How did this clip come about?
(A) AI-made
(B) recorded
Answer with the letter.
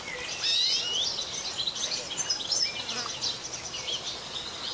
B